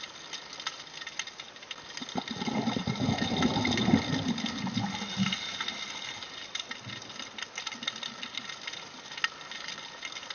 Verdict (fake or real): real